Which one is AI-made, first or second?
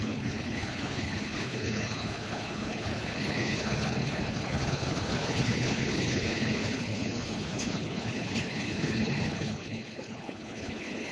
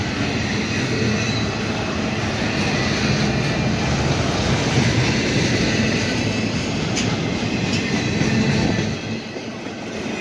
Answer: first